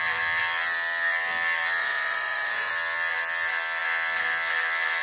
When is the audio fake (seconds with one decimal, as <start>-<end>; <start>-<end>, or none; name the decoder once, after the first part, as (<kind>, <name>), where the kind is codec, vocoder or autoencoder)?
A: 1.8-2.7 (vocoder, Vocos)